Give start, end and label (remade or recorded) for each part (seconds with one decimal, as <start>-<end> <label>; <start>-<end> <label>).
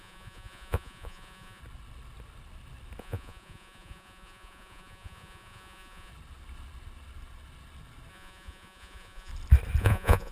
0.0-1.6 remade; 1.6-3.0 recorded; 3.0-6.1 remade; 6.1-8.1 recorded; 8.1-9.3 remade; 9.3-9.8 recorded; 9.8-10.3 remade